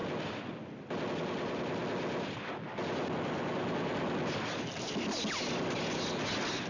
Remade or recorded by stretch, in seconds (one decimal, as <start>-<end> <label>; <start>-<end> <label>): 0.0-6.7 recorded